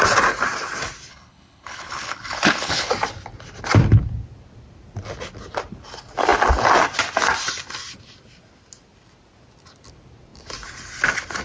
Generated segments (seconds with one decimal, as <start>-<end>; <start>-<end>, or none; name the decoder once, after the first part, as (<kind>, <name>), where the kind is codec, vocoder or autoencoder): 1.1-2.9 (codec, HILCodec)